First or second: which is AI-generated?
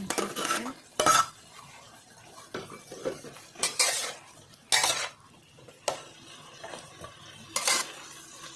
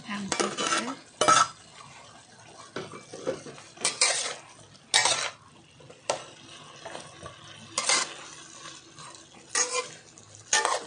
first